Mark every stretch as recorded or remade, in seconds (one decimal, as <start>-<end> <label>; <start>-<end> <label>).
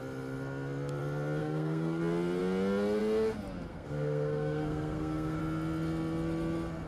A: 0.0-1.4 recorded; 1.4-2.0 remade; 2.0-3.7 recorded; 3.7-5.4 remade; 5.4-6.9 recorded